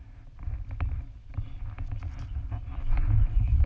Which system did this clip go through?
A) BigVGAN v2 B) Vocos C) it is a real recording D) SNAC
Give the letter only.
C